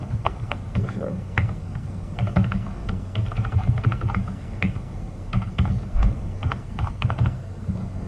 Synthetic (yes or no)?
yes